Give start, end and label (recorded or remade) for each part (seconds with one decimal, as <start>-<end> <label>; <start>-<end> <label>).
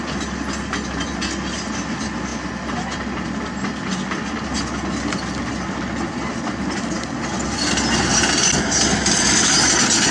0.0-10.1 recorded